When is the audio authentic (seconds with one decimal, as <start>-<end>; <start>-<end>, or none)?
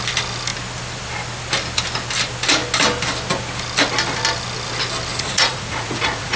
0.0-5.1